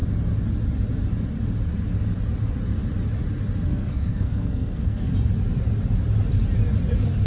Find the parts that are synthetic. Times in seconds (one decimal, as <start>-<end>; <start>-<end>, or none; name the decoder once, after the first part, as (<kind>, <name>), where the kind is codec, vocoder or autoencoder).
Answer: 3.7-5.1 (codec, SNAC)